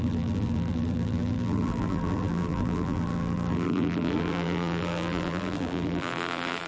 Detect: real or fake fake